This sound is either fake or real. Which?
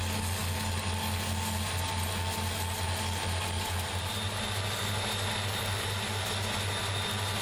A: real